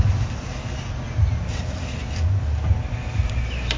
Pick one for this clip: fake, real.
real